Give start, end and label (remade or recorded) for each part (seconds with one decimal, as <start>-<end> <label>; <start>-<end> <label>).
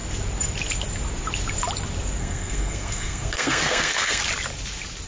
0.0-2.2 recorded; 2.2-4.2 remade; 4.2-5.1 recorded